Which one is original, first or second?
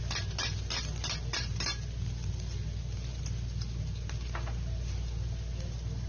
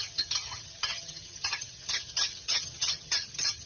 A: first